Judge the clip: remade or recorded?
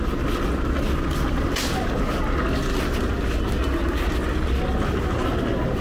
recorded